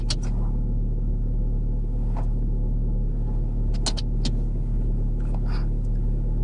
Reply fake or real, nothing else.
real